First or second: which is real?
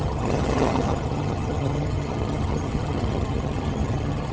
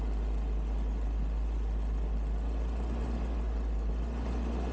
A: second